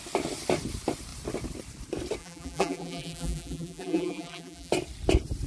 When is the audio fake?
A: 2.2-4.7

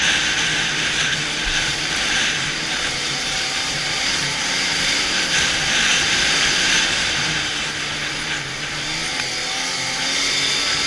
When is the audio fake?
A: 0.5-5.0; 5.9-8.2

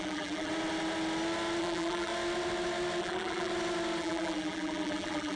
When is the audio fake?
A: 0.0-0.5; 1.6-2.1; 3.0-3.5; 4.0-5.4

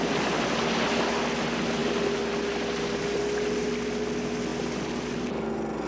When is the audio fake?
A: 1.8-3.0; 4.5-5.3

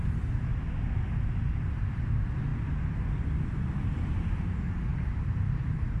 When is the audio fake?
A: 4.9-5.6

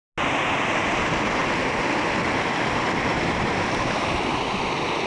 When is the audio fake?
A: 1.4-4.5